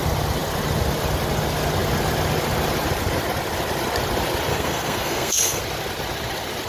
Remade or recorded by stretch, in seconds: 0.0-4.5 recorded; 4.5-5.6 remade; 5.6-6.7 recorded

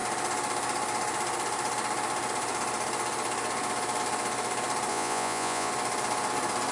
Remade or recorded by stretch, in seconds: 0.0-4.9 recorded; 4.9-5.7 remade; 5.7-6.7 recorded

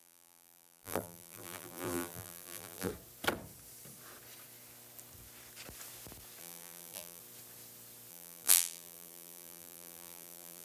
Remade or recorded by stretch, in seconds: 0.0-2.9 remade; 2.9-6.4 recorded; 6.4-7.2 remade; 7.2-8.1 recorded; 8.1-10.6 remade

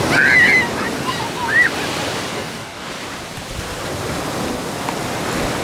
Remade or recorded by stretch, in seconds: 0.0-2.3 recorded; 2.3-2.9 remade; 2.9-5.6 recorded

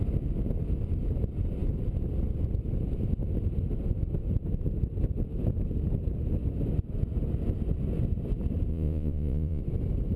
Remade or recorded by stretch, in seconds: 0.0-8.7 recorded; 8.7-9.6 remade; 9.6-10.2 recorded

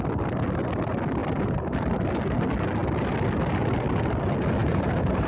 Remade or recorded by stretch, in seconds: 0.0-4.6 recorded; 4.6-5.3 remade